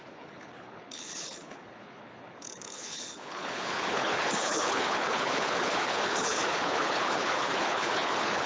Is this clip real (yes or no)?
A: no